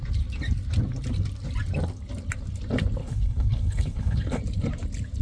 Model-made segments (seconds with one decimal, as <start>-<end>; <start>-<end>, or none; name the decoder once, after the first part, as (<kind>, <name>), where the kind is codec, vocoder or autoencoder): 3.0-4.4 (codec, HILCodec)